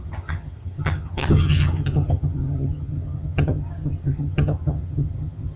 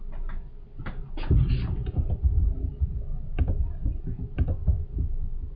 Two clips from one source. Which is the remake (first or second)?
first